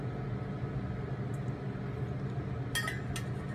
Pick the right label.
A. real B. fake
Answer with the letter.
A